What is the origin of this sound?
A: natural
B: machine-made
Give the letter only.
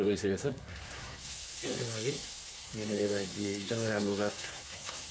B